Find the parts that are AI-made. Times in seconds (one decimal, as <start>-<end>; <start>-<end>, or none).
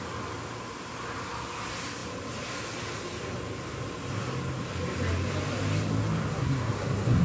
6.3-7.2